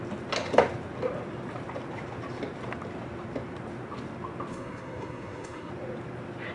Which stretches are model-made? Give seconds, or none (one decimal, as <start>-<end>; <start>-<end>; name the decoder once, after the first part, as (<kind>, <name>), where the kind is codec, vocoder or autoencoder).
4.5-5.7 (codec, SNAC)

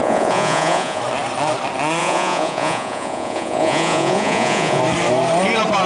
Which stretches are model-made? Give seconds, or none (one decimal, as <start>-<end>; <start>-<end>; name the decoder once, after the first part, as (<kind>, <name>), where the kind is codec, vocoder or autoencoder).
0.0-1.0 (vocoder, Vocos); 2.0-4.8

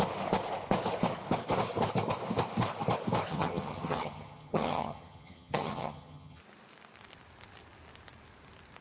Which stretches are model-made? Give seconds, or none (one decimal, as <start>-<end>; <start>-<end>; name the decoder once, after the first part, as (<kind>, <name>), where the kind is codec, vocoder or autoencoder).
3.3-6.4 (vocoder, HiFi-GAN)

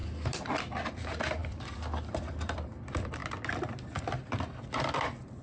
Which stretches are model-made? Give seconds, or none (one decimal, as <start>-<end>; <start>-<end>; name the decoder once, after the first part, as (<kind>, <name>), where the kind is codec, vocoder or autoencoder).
0.6-3.2 (vocoder, BigVGAN v2); 4.0-5.4

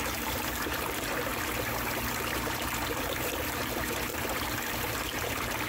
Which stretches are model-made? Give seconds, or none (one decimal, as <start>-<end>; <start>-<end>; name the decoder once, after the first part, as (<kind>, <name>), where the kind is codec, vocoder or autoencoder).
0.0-1.3 (vocoder, BigVGAN v2); 3.0-4.1; 4.7-5.7